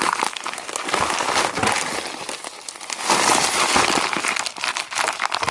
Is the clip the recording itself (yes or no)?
yes